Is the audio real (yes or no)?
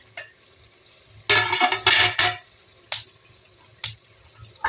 yes